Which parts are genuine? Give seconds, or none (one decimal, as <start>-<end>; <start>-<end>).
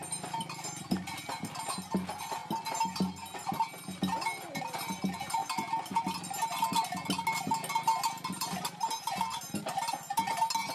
0.0-10.7